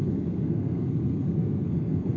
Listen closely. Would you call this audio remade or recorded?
remade